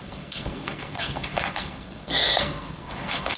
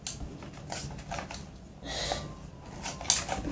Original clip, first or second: second